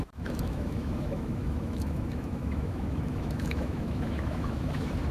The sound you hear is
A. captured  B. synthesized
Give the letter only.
B